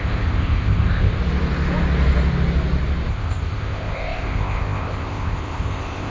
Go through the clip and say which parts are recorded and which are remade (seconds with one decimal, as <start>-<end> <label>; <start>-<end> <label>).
0.0-1.2 remade; 1.2-3.1 recorded; 3.1-6.1 remade